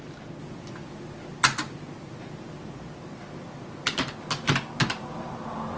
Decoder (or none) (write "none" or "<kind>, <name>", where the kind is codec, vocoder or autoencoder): none